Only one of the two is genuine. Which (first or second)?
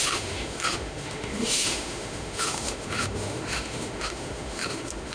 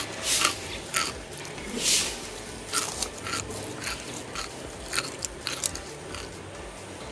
second